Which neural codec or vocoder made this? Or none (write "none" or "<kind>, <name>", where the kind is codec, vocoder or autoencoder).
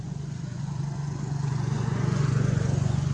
vocoder, Vocos